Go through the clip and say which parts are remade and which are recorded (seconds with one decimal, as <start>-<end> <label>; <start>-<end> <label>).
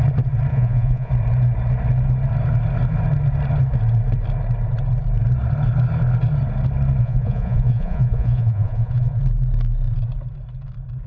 0.0-0.5 recorded; 0.5-1.1 remade; 1.1-7.0 recorded; 7.0-9.2 remade; 9.2-11.1 recorded